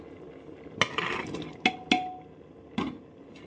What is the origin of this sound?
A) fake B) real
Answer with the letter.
B